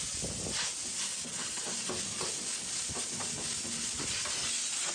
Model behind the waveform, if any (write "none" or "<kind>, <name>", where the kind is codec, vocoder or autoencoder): none